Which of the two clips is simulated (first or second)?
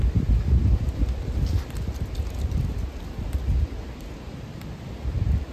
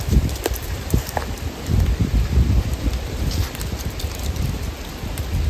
second